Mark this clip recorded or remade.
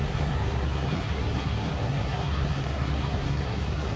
remade